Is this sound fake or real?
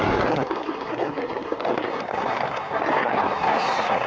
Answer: fake